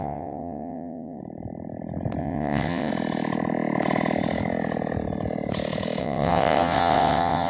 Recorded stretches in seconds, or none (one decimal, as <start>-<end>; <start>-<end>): 1.2-2.2; 2.9-6.0